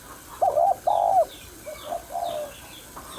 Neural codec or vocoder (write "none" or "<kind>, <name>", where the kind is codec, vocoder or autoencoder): none